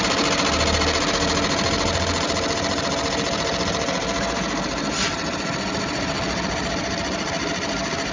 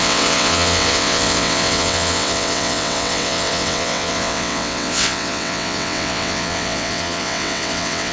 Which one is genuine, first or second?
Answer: first